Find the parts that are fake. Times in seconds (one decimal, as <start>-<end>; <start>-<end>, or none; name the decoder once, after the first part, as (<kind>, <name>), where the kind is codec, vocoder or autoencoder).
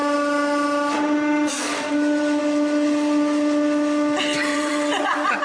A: 4.5-5.4 (vocoder, WaveNeXt)